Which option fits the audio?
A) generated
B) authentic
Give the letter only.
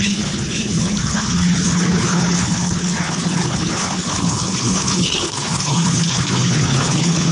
A